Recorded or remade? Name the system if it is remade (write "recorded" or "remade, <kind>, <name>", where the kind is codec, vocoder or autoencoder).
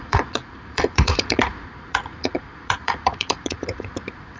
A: remade, vocoder, Vocos